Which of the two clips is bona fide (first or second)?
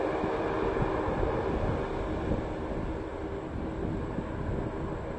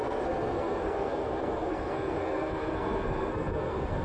first